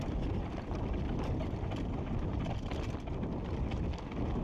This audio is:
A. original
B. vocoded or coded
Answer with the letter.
A